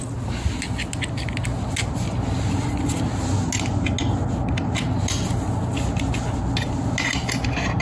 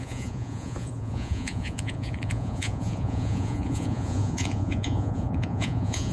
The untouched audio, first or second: first